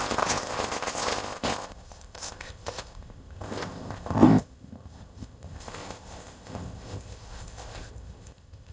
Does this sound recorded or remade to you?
remade